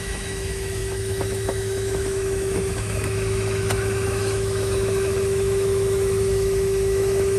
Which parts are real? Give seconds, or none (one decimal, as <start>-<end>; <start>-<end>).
none